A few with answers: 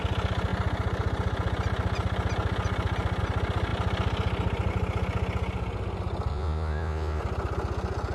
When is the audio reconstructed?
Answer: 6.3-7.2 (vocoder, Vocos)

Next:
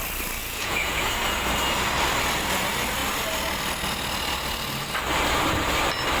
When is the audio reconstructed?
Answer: 0.4-1.0 (vocoder, Vocos)

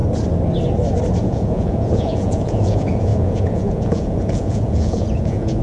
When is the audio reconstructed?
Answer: 1.2-5.6 (vocoder, Vocos)

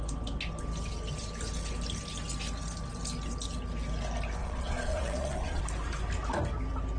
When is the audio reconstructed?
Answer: 4.4-5.6 (vocoder, Vocos)

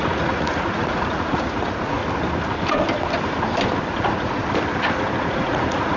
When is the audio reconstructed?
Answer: 0.0-2.0 (vocoder, Vocos); 3.9-4.4; 5.2-6.0